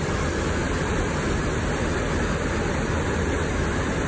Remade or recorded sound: remade